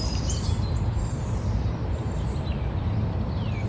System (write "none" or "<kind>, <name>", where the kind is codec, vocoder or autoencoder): vocoder, BigVGAN v2